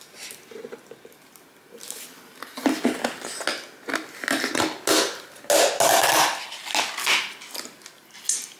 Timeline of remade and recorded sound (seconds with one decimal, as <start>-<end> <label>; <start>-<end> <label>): 0.0-8.6 recorded